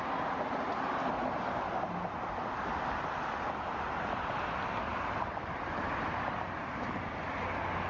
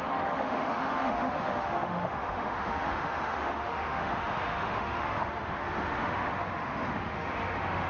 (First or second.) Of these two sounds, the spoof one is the second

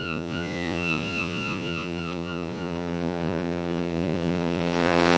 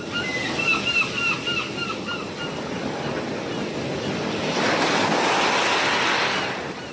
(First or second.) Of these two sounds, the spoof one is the first